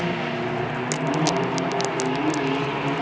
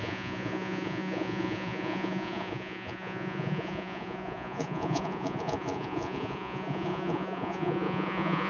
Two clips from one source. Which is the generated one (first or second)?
second